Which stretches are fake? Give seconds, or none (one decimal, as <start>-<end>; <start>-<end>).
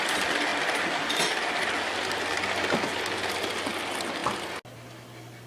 none